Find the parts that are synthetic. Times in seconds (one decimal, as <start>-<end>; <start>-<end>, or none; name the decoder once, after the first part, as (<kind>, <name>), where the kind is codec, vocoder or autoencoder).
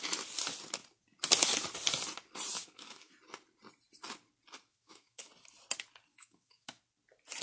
2.5-3.1 (autoencoder, DAC-VAE); 4.7-5.3; 6.1-6.8